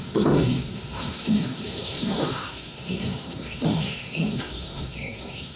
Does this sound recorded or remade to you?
remade